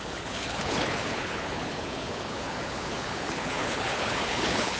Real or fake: fake